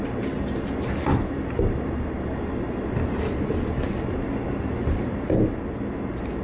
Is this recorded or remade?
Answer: recorded